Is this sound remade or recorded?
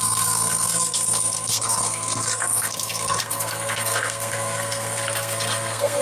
remade